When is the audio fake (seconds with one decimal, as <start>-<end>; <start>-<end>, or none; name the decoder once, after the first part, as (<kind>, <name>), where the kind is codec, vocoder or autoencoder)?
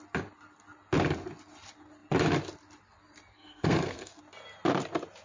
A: 3.3-4.2 (codec, SNAC)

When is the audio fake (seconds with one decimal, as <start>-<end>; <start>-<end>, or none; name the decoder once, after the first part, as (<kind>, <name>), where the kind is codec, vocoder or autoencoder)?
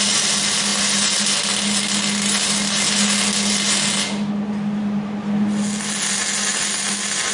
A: none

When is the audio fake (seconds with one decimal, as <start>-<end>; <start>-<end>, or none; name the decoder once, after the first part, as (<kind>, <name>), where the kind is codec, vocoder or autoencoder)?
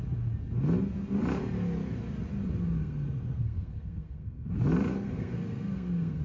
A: 2.8-4.5 (codec, SNAC); 4.9-6.2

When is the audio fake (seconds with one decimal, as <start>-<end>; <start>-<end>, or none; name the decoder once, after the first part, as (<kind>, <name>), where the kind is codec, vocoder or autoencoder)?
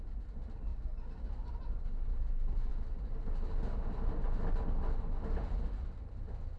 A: 0.7-1.5 (vocoder, BigVGAN v2)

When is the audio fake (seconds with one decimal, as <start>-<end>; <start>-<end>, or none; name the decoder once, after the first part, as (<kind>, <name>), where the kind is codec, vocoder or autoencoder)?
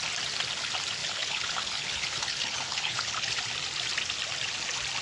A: 1.0-3.4 (codec, HILCodec)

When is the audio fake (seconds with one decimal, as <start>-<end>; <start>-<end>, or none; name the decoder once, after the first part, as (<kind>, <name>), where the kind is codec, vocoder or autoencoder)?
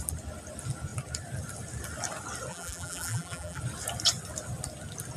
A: 2.5-3.6 (vocoder, BigVGAN v2)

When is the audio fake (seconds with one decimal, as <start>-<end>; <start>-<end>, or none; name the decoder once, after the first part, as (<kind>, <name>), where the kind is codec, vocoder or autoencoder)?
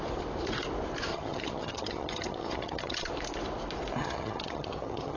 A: 1.1-3.1 (vocoder, HiFi-GAN); 4.0-5.2